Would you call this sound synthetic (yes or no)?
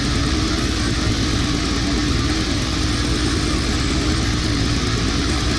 no